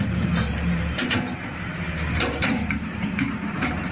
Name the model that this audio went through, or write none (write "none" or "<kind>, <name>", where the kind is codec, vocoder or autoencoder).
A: none